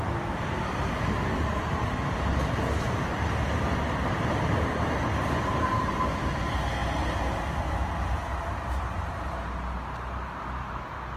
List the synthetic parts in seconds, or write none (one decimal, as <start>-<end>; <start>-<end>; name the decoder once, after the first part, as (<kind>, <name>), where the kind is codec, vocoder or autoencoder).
none